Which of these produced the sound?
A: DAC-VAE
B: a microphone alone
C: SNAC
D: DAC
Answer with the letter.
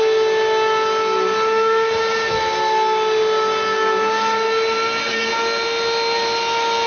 B